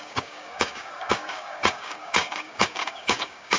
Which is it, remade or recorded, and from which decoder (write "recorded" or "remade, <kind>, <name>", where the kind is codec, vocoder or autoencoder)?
remade, codec, DAC